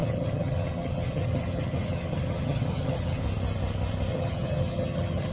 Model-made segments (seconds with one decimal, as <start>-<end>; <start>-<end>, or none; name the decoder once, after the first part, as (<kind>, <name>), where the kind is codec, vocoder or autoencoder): 0.0-3.2 (vocoder, HiFi-GAN); 4.1-5.3